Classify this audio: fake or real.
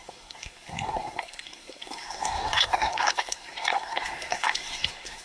fake